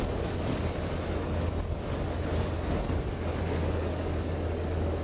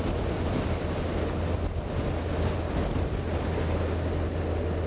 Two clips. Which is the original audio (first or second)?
second